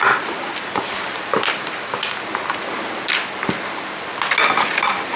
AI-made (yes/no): no